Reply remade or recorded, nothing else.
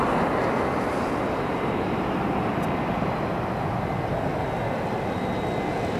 recorded